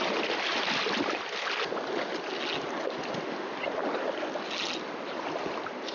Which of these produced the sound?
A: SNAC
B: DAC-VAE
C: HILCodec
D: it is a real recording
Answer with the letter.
D